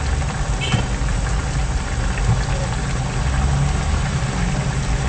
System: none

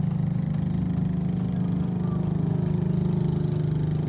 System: none